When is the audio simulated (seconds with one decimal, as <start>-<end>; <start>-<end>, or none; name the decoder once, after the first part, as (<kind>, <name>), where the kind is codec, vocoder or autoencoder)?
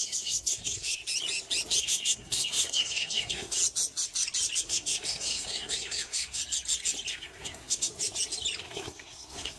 0.0-1.0 (codec, SNAC); 1.8-3.6; 4.6-6.4; 7.1-7.9; 8.6-9.6